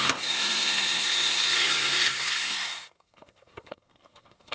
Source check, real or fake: fake